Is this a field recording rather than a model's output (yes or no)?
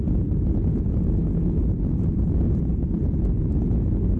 yes